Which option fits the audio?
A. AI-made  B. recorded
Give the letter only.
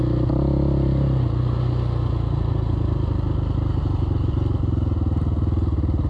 B